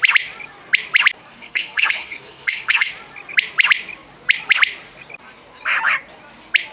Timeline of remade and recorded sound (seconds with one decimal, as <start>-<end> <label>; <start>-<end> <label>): 0.0-1.2 recorded; 1.2-2.9 remade; 2.9-6.7 recorded